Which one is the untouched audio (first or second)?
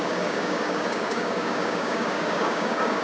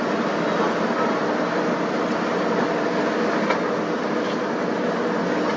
second